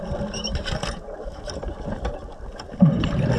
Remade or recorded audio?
recorded